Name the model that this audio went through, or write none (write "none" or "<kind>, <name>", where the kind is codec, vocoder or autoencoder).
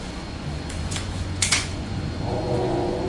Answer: vocoder, Vocos